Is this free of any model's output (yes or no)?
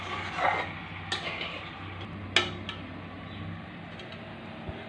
yes